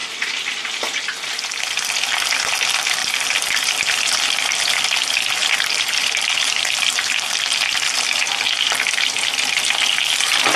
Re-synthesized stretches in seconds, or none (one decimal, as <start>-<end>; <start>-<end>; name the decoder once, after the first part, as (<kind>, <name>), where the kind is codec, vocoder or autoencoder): none

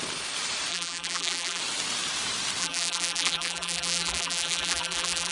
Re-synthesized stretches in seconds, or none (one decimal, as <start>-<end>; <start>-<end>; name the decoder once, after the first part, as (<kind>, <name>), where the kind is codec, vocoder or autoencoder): 0.7-1.6 (vocoder, BigVGAN v2); 2.6-5.3

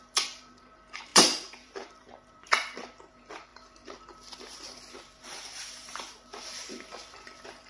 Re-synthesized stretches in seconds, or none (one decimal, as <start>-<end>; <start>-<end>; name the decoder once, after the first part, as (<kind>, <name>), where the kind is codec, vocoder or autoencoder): 0.0-7.7 (vocoder, BigVGAN v2)

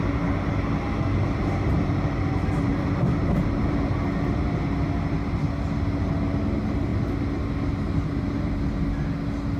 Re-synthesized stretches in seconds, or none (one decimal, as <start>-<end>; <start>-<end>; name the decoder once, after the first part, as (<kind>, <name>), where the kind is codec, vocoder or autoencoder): none

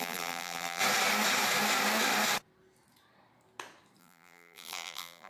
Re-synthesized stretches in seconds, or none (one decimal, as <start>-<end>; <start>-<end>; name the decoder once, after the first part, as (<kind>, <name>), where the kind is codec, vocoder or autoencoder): 0.0-0.8 (vocoder, BigVGAN v2); 4.0-5.3

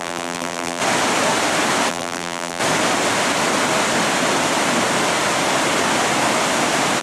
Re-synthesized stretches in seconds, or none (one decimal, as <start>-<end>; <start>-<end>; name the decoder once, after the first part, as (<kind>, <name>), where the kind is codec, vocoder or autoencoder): 0.0-0.8 (vocoder, BigVGAN v2); 1.9-2.6